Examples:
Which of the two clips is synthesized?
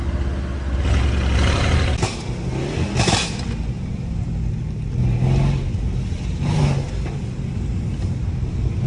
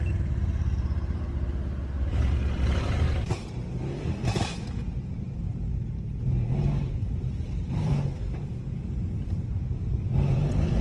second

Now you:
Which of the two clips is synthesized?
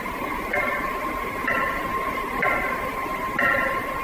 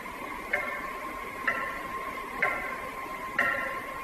first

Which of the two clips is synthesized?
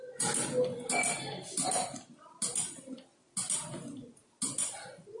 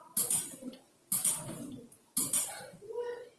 second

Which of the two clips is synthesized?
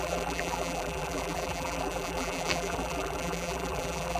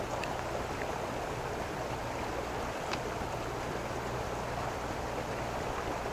first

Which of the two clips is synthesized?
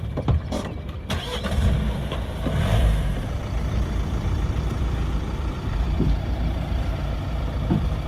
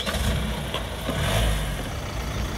first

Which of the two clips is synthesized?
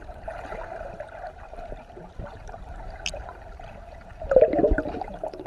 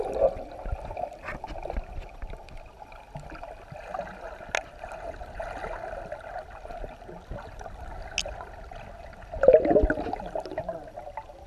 first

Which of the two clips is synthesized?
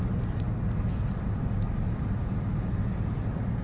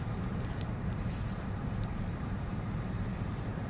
second